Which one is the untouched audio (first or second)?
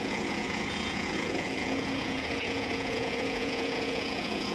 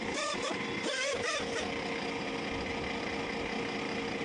second